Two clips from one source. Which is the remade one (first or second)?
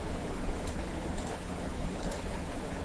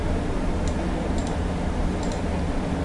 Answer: first